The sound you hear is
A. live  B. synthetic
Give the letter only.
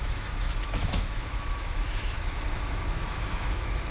B